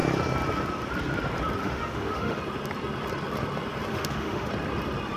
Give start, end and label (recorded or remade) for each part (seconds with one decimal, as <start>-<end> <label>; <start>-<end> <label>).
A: 0.0-1.6 recorded; 1.6-2.4 remade; 2.4-3.9 recorded; 3.9-4.5 remade; 4.5-5.2 recorded